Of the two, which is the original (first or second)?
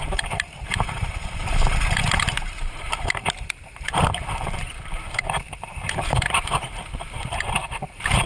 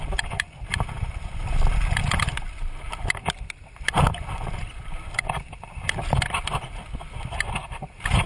second